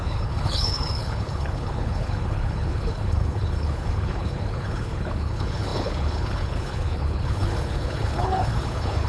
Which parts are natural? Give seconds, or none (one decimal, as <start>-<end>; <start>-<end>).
none